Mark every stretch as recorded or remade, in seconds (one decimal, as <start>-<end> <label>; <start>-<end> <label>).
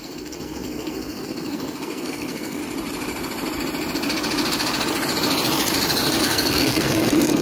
0.0-2.6 remade; 2.6-6.2 recorded; 6.2-7.4 remade